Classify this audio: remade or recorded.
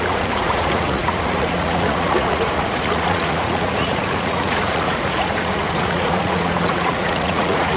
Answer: remade